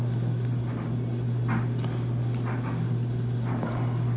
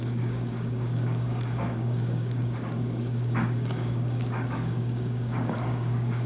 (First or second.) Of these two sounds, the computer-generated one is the second